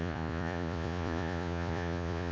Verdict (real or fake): fake